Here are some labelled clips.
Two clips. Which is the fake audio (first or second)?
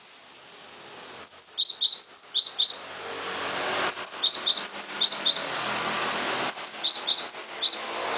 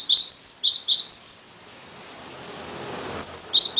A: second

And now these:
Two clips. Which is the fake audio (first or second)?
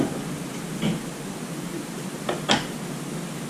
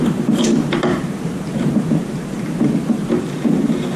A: second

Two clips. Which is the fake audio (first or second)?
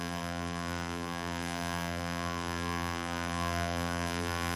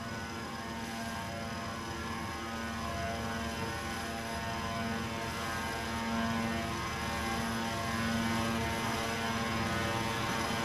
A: first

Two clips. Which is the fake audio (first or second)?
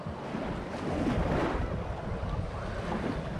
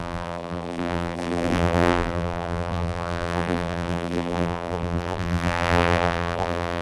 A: second